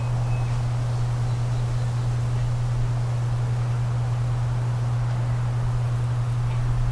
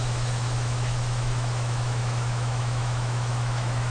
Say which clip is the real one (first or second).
first